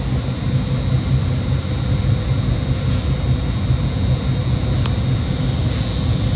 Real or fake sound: real